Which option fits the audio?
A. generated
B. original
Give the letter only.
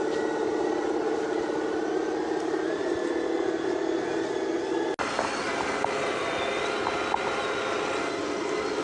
B